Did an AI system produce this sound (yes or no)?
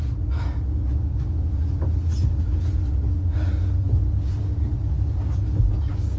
no